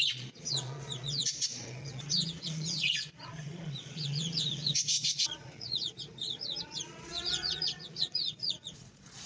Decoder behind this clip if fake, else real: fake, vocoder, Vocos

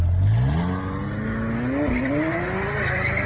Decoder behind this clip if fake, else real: real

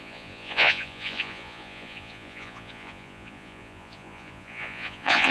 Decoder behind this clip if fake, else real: fake, vocoder, Vocos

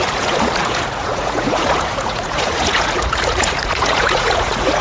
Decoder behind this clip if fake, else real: fake, vocoder, Vocos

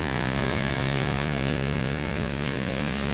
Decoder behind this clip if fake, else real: fake, vocoder, Vocos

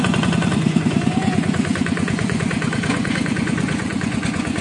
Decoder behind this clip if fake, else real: fake, vocoder, Vocos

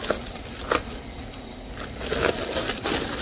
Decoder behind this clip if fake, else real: real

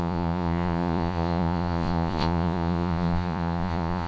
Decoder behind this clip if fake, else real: fake, vocoder, Vocos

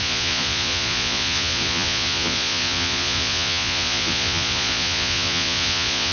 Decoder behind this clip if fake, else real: fake, vocoder, Vocos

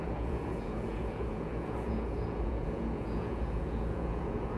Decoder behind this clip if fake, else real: fake, vocoder, Vocos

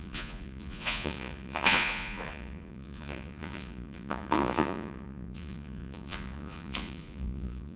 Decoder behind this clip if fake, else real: fake, vocoder, Vocos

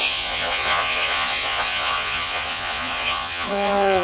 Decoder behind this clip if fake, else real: fake, vocoder, Vocos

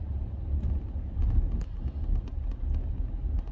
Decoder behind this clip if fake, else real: real